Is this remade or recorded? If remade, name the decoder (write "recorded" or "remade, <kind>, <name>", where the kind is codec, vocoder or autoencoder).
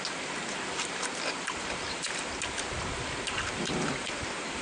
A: recorded